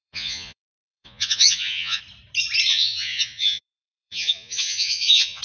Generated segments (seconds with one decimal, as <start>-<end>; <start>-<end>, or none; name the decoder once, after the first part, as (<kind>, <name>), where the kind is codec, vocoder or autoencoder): 0.0-2.0 (vocoder, Vocos); 2.7-5.4